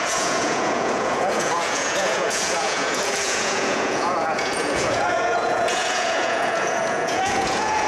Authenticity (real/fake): fake